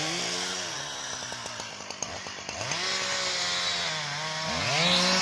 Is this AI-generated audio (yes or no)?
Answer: no